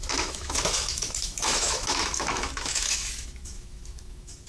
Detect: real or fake fake